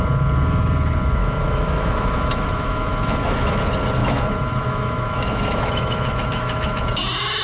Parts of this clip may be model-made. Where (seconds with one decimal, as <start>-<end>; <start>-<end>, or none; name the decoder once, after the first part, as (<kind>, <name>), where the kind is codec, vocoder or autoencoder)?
1.2-3.6 (autoencoder, DAC-VAE); 4.0-6.8